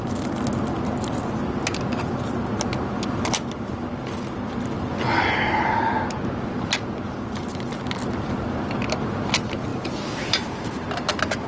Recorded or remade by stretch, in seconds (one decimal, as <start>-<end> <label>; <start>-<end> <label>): 0.0-9.7 recorded; 9.7-10.6 remade; 10.6-11.5 recorded